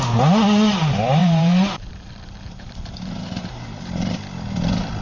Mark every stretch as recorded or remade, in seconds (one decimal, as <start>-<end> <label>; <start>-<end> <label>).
0.0-1.2 recorded; 1.2-4.2 remade; 4.2-5.0 recorded